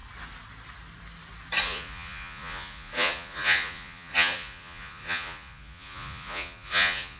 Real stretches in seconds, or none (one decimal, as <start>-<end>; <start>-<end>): 0.0-1.6